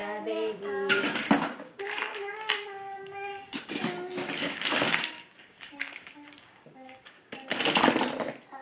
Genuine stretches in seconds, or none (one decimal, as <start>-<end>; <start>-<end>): 3.6-4.4; 7.6-8.6